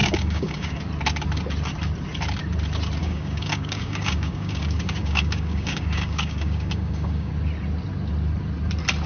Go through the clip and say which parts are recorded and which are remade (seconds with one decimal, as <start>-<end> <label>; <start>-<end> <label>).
0.0-0.8 remade; 0.8-3.0 recorded; 3.0-7.3 remade; 7.3-9.1 recorded